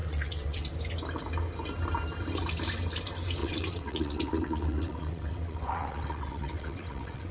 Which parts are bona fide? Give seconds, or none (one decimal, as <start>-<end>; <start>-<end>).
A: 0.7-3.4